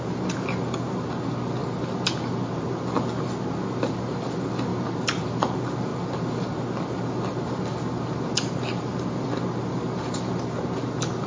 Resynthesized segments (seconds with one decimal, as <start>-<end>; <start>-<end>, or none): 4.7-5.3